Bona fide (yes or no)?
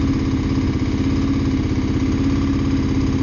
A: yes